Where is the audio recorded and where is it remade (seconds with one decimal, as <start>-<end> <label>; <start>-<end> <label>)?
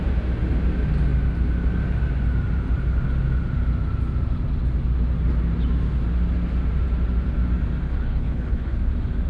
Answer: 0.0-7.9 recorded; 7.9-8.8 remade; 8.8-9.3 recorded